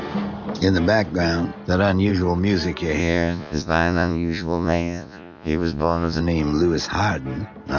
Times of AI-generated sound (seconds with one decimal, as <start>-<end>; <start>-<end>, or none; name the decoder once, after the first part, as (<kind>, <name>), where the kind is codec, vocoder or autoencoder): 3.0-6.2 (vocoder, Vocos)